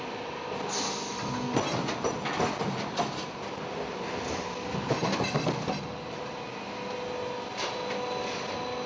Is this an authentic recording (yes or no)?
yes